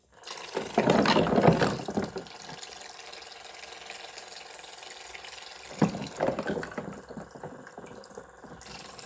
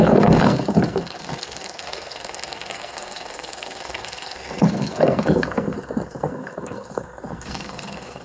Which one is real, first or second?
first